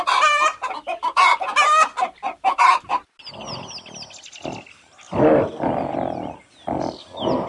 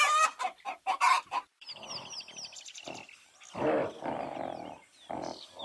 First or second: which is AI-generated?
second